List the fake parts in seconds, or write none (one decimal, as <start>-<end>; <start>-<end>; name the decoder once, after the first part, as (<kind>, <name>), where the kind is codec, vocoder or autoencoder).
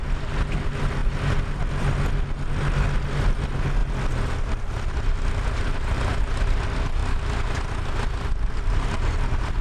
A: 3.8-6.2 (vocoder, BigVGAN v2)